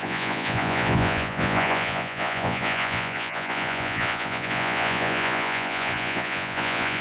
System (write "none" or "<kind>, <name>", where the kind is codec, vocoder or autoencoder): vocoder, Vocos